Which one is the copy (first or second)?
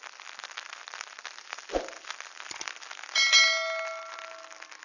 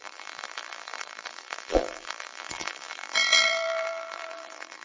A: second